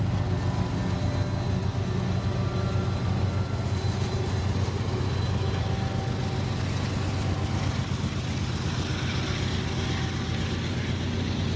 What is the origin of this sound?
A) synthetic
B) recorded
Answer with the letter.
B